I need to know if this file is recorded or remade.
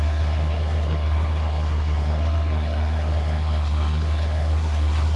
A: remade